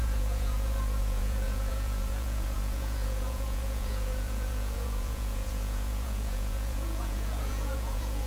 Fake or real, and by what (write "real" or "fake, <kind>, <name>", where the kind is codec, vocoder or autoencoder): fake, vocoder, Vocos